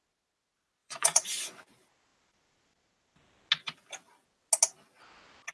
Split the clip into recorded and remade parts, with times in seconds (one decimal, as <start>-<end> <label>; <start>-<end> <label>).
0.0-0.8 recorded; 0.8-1.6 remade; 1.6-5.5 recorded